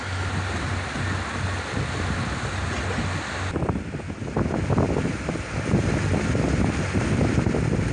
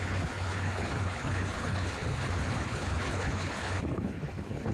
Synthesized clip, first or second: second